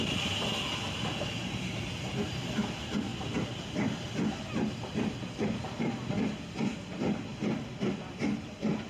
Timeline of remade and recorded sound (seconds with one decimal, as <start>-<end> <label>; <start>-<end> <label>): 0.0-8.9 recorded